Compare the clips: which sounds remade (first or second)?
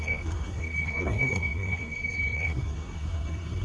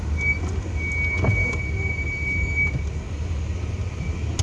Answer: first